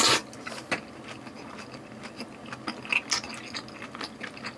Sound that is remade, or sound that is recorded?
recorded